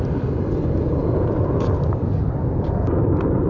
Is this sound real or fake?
fake